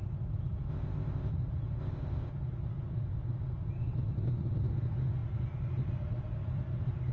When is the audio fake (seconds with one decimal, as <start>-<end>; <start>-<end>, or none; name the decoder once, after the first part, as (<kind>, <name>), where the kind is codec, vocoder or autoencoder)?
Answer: 0.7-1.3 (codec, ZipCodec); 1.8-2.3

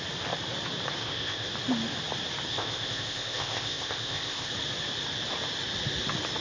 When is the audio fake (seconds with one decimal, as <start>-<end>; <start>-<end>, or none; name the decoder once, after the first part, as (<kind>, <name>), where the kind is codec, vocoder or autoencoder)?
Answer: 1.0-1.5 (codec, ZipCodec); 2.5-4.5

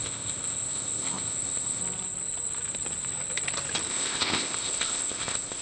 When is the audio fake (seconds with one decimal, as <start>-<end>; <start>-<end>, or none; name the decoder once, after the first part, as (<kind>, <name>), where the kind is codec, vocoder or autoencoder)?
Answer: 0.0-1.8 (codec, ZipCodec); 3.9-5.6

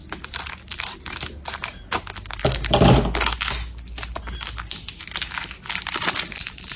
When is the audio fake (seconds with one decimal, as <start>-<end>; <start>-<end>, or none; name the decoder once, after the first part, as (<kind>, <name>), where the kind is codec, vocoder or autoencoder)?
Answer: none

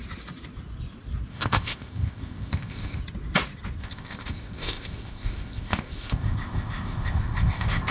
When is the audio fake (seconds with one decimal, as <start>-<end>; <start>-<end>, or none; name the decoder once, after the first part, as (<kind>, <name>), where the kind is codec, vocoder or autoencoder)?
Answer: 1.3-3.0 (codec, ZipCodec); 3.8-7.9

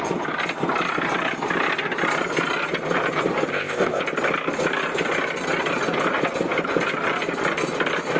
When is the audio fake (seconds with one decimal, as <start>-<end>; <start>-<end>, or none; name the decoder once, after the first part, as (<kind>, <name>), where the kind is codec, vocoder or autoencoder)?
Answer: 3.5-4.0 (codec, ZipCodec)